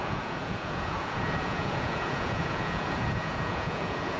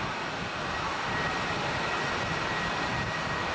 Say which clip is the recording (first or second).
second